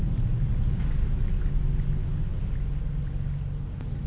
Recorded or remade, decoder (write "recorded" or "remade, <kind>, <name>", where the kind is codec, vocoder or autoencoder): recorded